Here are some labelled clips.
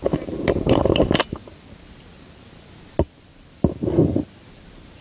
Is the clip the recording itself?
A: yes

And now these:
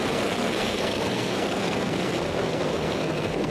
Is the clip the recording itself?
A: no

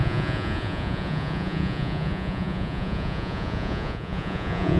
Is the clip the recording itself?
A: no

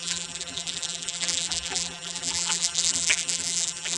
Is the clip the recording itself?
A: no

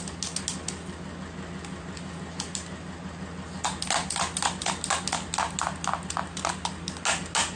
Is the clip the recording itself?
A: yes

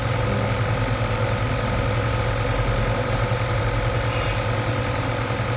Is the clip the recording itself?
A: yes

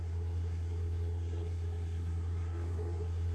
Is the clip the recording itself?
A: no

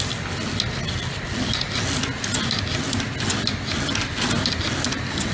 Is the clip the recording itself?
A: yes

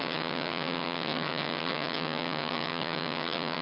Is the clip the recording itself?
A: no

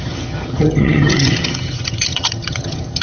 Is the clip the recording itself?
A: no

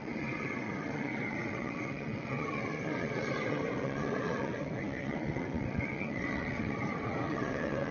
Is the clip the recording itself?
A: no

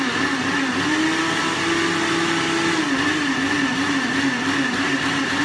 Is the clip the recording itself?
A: yes